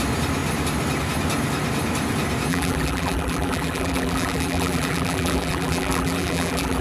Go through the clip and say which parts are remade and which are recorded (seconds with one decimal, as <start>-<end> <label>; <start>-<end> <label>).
0.0-2.5 recorded; 2.5-6.8 remade